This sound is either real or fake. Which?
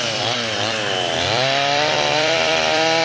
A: fake